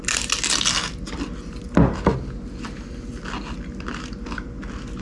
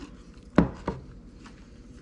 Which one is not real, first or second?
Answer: second